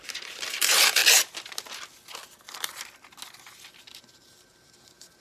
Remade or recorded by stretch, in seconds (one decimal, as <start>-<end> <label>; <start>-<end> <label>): 0.0-1.0 remade; 1.0-4.1 recorded; 4.1-5.2 remade